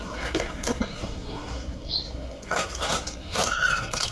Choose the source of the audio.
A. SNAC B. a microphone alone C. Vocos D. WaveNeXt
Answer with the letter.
A